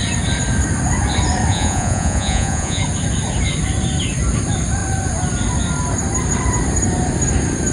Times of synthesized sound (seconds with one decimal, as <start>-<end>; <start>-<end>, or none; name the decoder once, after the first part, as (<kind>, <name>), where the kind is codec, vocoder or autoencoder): 1.5-2.8 (vocoder, Vocos)